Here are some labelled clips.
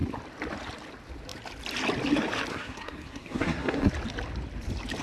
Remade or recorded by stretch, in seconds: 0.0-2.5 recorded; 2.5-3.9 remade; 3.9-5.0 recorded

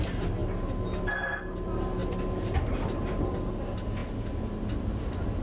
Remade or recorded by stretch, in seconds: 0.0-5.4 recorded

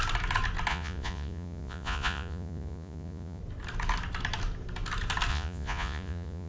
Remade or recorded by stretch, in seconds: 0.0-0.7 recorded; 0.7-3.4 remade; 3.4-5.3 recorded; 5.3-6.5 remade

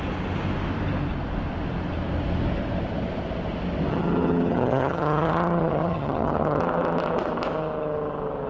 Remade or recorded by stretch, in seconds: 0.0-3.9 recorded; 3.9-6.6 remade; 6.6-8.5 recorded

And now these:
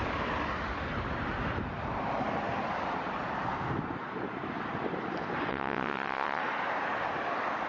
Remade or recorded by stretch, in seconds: 0.0-5.5 recorded; 5.5-6.4 remade; 6.4-7.7 recorded

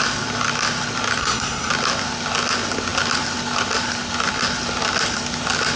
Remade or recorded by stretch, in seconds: 0.0-1.2 recorded; 1.2-1.7 remade; 1.7-5.8 recorded